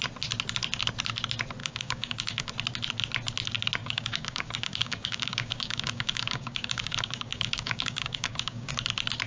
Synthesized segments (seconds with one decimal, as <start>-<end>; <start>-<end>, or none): 1.6-2.5; 3.8-8.7